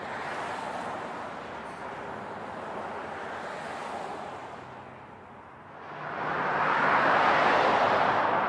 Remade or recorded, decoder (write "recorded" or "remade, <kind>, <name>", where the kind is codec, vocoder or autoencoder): recorded